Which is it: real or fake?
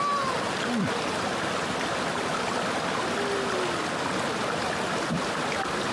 real